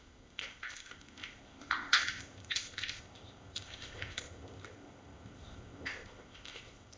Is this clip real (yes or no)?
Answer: no